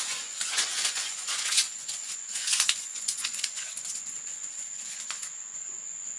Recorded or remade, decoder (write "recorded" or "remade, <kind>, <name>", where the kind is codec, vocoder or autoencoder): remade, vocoder, Vocos